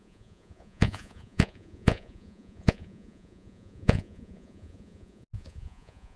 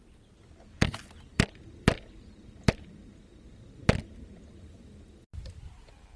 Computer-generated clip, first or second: first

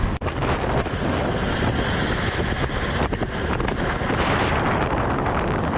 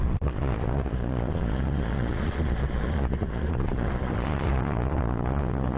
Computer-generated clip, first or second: second